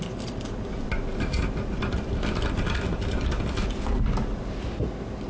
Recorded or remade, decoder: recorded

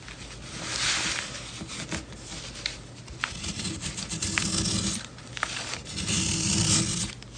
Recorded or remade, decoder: recorded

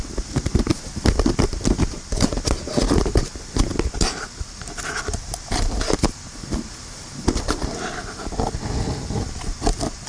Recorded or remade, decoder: recorded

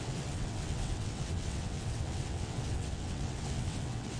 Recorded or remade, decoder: remade, vocoder, WaveNeXt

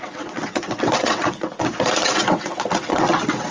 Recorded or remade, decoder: remade, vocoder, WaveNeXt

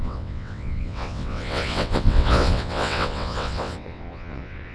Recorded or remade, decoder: remade, vocoder, WaveNeXt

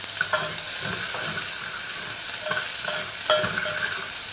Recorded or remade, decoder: recorded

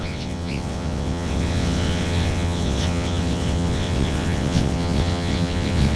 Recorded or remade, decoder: remade, vocoder, WaveNeXt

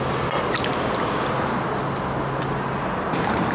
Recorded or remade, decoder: recorded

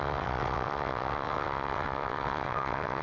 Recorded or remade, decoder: remade, vocoder, WaveNeXt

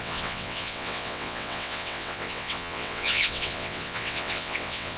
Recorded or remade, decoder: remade, vocoder, WaveNeXt